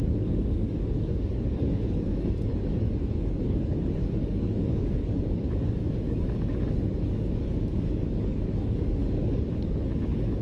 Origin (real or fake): fake